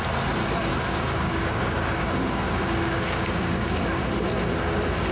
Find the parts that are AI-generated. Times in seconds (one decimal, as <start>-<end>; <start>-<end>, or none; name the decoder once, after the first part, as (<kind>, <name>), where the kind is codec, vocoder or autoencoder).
0.7-3.8 (codec, DAC)